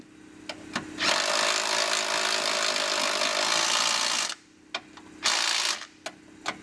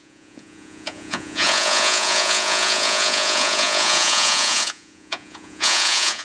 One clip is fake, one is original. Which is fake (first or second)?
second